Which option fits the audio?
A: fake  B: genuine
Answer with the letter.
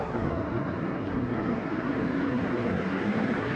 A